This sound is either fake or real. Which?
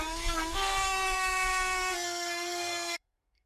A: fake